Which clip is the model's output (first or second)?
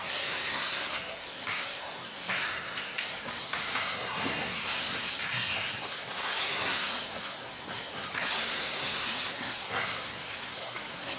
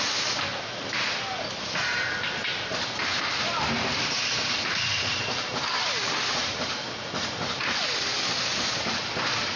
first